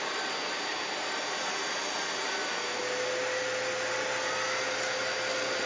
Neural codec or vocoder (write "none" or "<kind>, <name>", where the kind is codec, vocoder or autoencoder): none